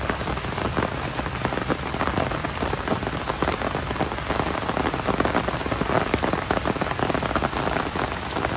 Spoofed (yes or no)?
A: no